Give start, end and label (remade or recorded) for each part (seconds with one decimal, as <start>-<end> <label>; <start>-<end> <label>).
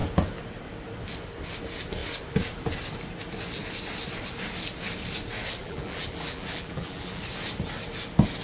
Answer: 0.0-5.6 recorded; 5.6-7.2 remade; 7.2-8.4 recorded